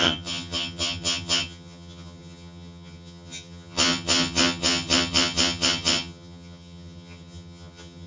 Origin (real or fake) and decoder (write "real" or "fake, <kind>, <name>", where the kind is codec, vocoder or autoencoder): fake, vocoder, HiFi-GAN